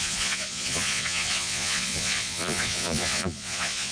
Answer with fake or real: fake